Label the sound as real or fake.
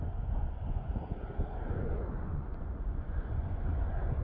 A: fake